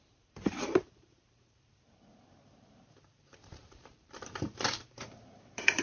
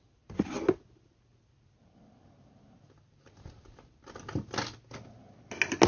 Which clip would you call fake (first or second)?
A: first